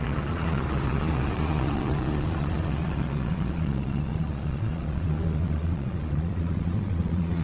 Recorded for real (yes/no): no